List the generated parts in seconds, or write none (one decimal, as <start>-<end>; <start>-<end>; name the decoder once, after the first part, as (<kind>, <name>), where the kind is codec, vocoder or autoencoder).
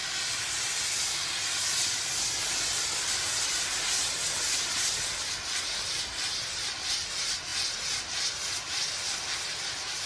none